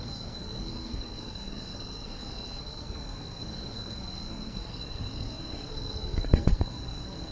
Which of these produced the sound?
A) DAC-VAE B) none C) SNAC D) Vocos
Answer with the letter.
C